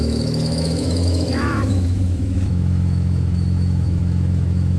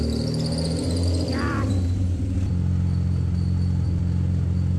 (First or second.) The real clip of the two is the second